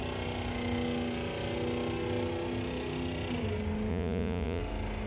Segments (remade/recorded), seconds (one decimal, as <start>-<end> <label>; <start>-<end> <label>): 0.0-3.9 recorded; 3.9-4.6 remade; 4.6-5.1 recorded